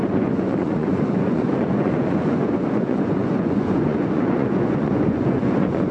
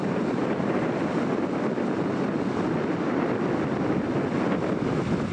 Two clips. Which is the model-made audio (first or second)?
first